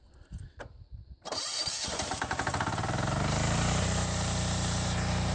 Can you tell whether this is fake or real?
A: fake